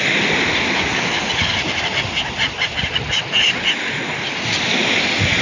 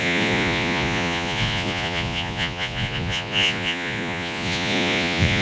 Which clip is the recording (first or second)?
first